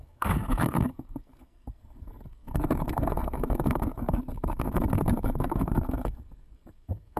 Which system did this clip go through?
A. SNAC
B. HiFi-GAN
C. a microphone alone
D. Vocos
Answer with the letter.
A